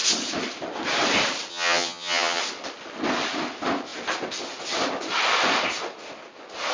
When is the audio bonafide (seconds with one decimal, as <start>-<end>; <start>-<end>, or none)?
0.0-1.5; 2.4-6.7